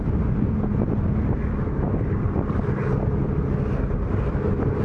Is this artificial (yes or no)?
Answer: no